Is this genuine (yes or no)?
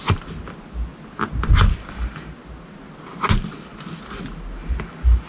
yes